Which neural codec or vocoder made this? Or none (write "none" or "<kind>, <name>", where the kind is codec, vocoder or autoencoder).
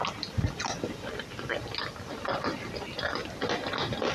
none